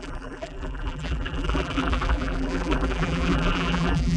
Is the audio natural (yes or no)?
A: no